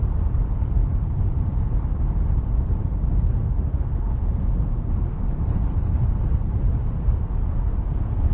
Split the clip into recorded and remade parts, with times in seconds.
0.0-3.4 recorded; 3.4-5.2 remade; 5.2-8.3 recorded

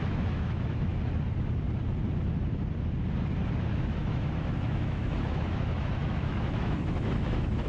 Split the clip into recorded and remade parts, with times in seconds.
0.0-0.9 remade; 0.9-3.6 recorded; 3.6-7.7 remade

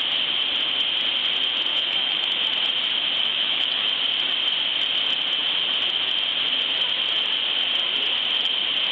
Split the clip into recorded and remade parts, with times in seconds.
0.0-1.7 recorded; 1.7-2.4 remade; 2.4-3.2 recorded; 3.2-3.9 remade; 3.9-8.9 recorded

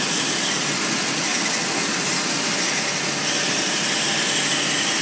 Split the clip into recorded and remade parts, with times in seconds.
0.0-5.0 recorded

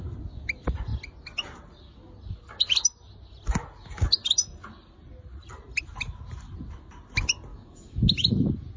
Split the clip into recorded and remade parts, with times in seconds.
0.0-7.5 recorded; 7.5-8.3 remade; 8.3-8.8 recorded

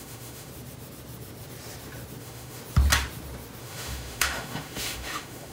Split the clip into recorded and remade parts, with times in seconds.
0.0-0.5 remade; 0.5-2.2 recorded; 2.2-2.6 remade; 2.6-3.6 recorded; 3.6-5.5 remade